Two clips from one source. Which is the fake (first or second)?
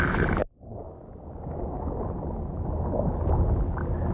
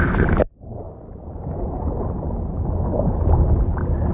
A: second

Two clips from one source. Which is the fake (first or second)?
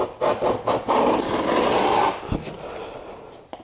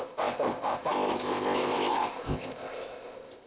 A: second